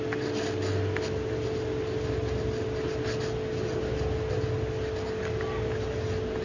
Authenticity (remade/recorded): recorded